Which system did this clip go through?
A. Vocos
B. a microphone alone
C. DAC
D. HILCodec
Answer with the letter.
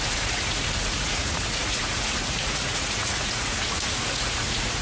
A